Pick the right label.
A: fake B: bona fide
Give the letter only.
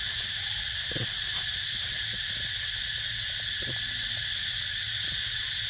B